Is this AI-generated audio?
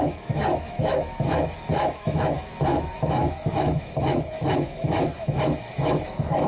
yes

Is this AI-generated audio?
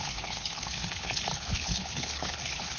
yes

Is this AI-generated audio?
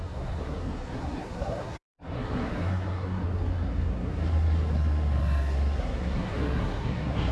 yes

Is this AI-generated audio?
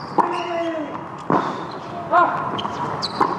no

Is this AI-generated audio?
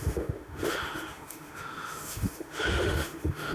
yes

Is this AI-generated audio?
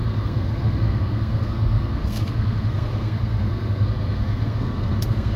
yes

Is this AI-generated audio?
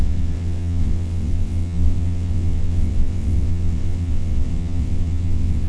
yes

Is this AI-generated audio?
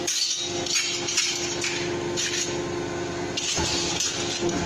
no